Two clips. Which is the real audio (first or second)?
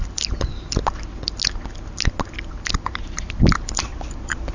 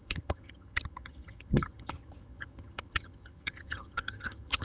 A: first